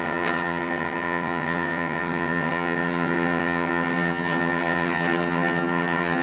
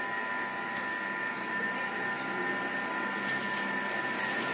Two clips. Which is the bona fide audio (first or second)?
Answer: second